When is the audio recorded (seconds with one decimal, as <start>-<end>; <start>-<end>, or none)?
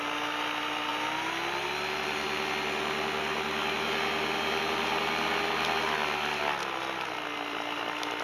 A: 0.0-8.2